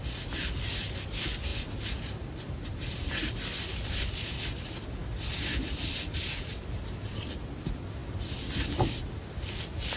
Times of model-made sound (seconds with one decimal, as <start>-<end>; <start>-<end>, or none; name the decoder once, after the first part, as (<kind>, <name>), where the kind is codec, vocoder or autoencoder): none